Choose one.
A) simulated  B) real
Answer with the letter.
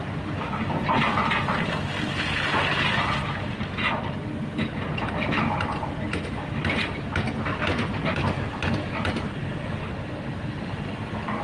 B